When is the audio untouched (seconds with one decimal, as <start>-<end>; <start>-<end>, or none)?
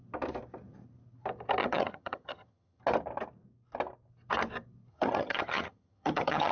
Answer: 0.0-1.6; 2.8-4.9